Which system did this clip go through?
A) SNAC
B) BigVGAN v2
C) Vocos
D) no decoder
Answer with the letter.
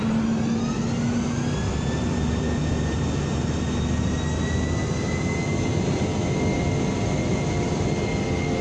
D